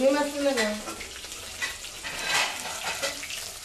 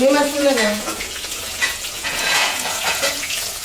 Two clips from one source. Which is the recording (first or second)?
first